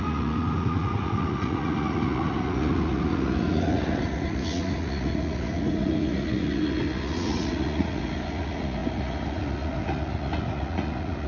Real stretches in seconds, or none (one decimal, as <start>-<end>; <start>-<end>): none